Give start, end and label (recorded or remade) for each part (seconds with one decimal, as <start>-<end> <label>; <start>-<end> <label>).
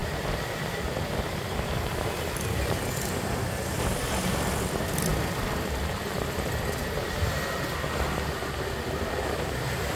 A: 0.0-9.9 recorded